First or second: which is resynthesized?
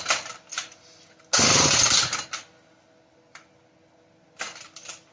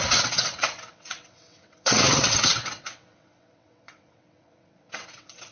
second